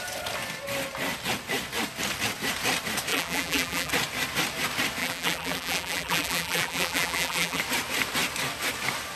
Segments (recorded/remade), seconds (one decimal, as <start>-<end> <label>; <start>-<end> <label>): 0.0-3.1 recorded; 3.1-3.9 remade; 3.9-5.0 recorded; 5.0-7.6 remade; 7.6-9.2 recorded